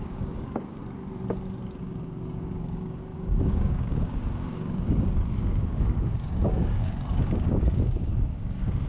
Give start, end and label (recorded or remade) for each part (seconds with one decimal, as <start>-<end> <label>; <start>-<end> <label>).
0.0-0.8 remade; 0.8-1.8 recorded; 1.8-8.9 remade